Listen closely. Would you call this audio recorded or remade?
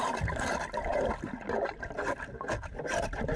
recorded